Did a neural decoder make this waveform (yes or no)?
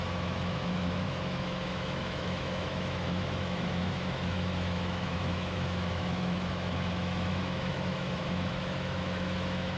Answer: yes